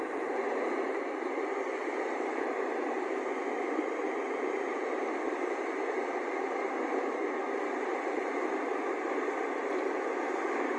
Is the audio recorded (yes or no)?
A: no